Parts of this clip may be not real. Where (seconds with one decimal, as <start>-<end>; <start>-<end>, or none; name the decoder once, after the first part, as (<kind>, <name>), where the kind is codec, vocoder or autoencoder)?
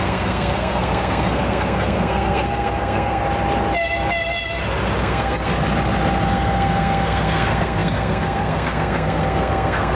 0.0-3.2 (codec, SNAC); 5.0-5.5; 6.3-9.9